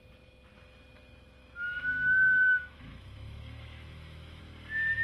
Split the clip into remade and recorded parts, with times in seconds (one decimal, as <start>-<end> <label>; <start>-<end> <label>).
0.0-1.4 recorded; 1.4-4.4 remade; 4.4-5.0 recorded